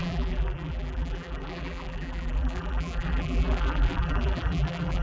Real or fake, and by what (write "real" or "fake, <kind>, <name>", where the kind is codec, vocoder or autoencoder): fake, vocoder, BigVGAN v2